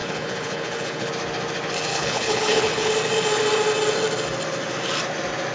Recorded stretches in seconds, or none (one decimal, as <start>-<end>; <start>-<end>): 1.1-1.9; 2.9-5.5